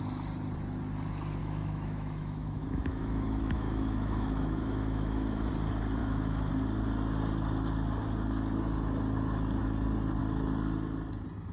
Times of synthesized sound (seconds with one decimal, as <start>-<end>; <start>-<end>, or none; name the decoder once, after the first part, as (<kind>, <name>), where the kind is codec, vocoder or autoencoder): 1.4-5.5 (autoencoder, DAC-VAE); 6.0-6.5

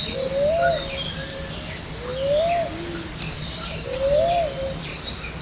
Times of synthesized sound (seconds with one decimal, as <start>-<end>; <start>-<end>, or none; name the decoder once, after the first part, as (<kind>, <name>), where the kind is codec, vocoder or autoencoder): none

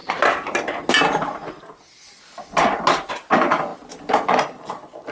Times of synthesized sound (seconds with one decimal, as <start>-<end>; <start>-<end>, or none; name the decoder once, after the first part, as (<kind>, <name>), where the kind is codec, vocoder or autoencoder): none

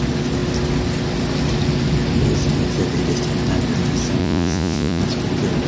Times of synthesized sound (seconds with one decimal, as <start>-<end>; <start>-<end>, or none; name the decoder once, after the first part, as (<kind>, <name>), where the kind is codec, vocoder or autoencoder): 4.2-5.0 (vocoder, Vocos)

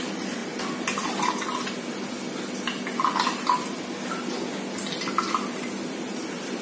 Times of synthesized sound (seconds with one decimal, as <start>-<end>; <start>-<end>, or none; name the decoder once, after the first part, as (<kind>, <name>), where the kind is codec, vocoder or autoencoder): none

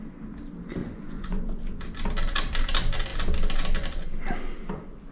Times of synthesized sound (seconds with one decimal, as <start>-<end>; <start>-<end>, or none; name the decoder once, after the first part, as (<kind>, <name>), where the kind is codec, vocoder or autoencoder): 0.8-1.6 (vocoder, Vocos)